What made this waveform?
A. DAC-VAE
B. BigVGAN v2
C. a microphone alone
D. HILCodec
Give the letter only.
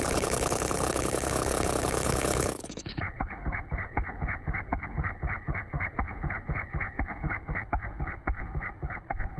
D